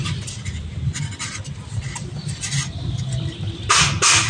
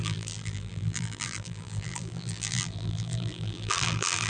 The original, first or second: first